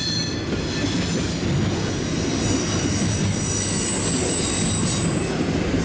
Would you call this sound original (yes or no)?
yes